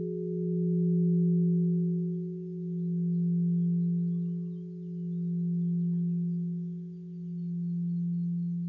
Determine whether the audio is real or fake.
real